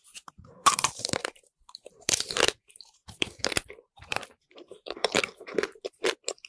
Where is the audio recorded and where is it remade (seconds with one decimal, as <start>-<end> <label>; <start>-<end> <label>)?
0.0-6.5 remade